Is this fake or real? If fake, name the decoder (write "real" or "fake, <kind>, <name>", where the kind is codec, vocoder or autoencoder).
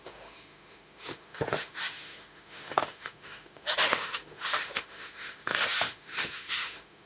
fake, autoencoder, DAC-VAE